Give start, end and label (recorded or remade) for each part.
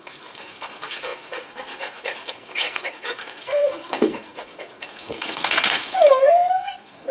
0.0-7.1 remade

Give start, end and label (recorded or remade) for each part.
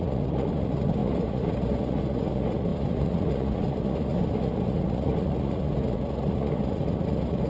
0.0-7.5 remade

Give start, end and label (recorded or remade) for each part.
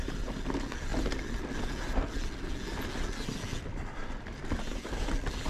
0.0-5.5 recorded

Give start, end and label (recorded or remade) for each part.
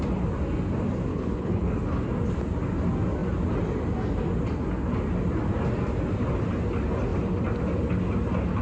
0.0-1.1 recorded; 1.1-1.7 remade; 1.7-8.6 recorded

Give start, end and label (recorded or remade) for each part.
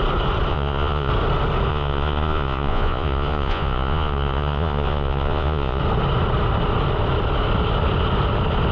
0.0-0.5 recorded; 0.5-1.1 remade; 1.1-1.7 recorded; 1.7-5.8 remade; 5.8-8.7 recorded